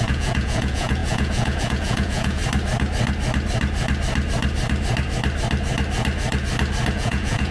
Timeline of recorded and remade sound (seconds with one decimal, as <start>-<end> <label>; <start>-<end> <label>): 0.0-2.4 remade; 2.4-6.9 recorded; 6.9-7.5 remade